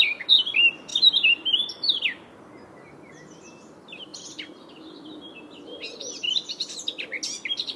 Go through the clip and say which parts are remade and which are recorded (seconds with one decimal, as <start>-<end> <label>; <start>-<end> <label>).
0.0-0.9 recorded; 0.9-2.0 remade; 2.0-4.1 recorded; 4.1-4.9 remade; 4.9-7.8 recorded